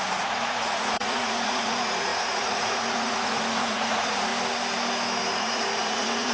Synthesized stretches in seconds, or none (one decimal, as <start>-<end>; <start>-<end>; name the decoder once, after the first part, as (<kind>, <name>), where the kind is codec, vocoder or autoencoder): 0.0-4.3 (vocoder, Vocos); 5.3-6.3